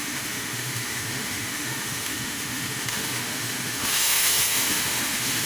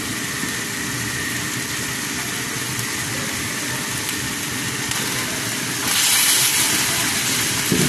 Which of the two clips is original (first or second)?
second